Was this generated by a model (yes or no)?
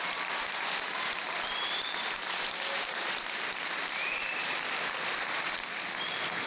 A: yes